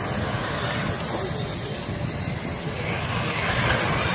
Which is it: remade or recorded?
recorded